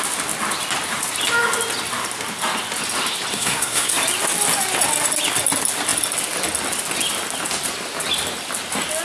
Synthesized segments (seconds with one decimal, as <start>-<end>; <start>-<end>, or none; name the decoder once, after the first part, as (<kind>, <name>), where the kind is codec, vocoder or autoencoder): 3.3-3.9 (codec, SNAC)